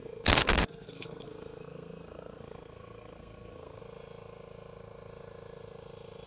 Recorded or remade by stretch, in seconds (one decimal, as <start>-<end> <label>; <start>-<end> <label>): 0.0-3.8 remade; 3.8-6.3 recorded